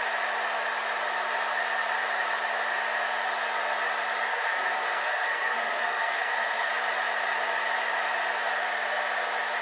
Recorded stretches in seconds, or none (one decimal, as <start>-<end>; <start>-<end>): 0.0-4.3; 6.7-9.6